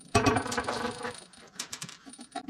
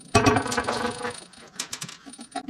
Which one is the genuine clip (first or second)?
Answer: second